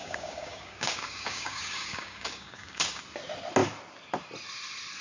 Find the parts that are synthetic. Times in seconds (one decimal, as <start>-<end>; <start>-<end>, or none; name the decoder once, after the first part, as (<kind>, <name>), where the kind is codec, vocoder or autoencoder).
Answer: 0.0-3.0 (codec, DAC)